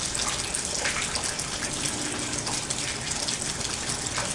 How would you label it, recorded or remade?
recorded